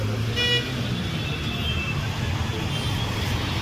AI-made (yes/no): no